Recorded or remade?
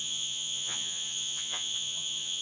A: remade